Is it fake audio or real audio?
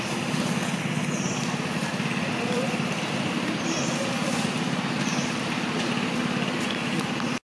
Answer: real